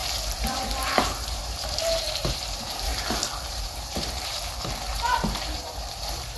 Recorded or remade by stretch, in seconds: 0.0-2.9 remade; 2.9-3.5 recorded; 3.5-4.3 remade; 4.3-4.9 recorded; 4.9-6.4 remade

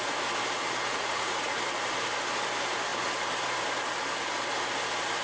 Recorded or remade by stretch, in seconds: 0.0-0.9 recorded; 0.9-1.6 remade; 1.6-5.2 recorded

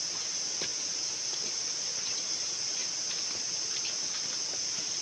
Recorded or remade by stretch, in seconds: 0.0-5.0 recorded

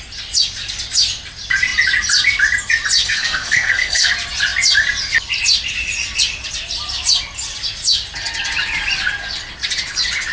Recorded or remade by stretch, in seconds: 0.0-3.0 recorded; 3.0-4.1 remade; 4.1-10.3 recorded

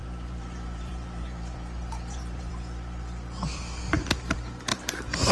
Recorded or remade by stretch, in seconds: 0.0-2.5 remade; 2.5-4.7 recorded; 4.7-5.3 remade

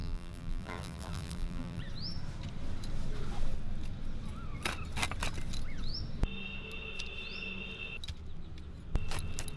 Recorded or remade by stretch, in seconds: 0.0-1.8 remade; 1.8-9.6 recorded